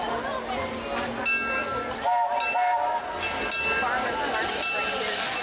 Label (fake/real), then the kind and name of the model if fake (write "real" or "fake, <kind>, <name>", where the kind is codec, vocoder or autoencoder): real